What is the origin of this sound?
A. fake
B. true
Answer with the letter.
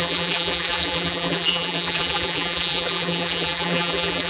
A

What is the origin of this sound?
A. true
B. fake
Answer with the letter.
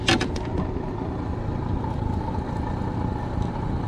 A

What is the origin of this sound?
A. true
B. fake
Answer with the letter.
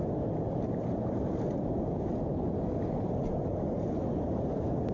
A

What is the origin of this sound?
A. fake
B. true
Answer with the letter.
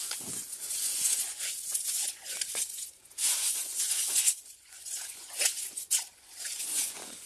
A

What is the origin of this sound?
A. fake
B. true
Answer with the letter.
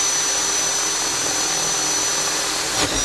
B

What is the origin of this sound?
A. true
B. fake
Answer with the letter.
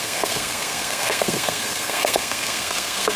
B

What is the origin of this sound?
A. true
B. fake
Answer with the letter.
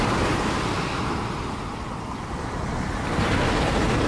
A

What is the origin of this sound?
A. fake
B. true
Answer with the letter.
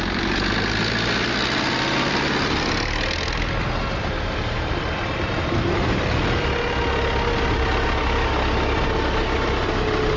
B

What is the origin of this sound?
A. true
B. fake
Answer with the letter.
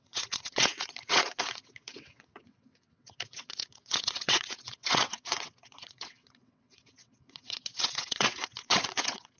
B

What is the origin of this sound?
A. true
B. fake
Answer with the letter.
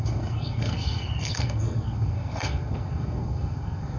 B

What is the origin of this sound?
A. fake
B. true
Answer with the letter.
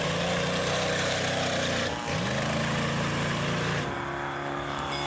B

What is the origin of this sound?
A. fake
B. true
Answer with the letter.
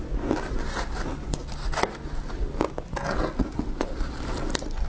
B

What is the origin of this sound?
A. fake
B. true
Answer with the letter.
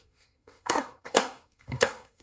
A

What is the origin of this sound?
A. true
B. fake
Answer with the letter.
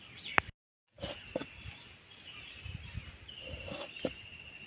A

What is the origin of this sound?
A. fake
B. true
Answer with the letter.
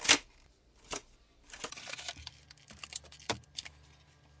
A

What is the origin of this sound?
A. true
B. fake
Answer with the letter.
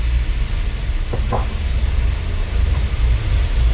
A